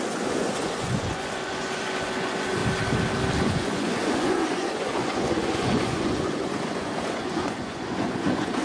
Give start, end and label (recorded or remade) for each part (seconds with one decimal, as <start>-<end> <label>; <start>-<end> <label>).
0.0-2.6 remade; 2.6-3.4 recorded; 3.4-8.6 remade